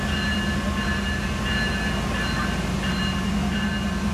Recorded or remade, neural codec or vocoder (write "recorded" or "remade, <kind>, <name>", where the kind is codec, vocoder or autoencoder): recorded